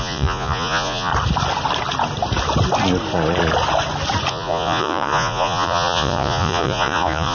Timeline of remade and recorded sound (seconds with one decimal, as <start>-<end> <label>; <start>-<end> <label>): 0.0-1.1 remade; 1.1-4.3 recorded; 4.3-7.3 remade